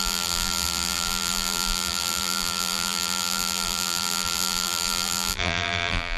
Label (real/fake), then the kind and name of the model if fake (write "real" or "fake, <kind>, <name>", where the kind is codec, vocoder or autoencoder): fake, vocoder, BigVGAN v2